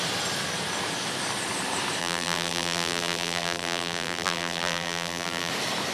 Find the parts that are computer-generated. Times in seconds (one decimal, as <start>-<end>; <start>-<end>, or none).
2.0-5.5